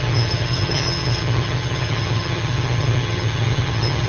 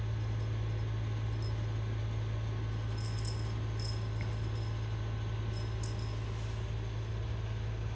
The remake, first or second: first